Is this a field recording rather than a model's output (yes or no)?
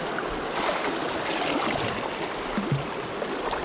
yes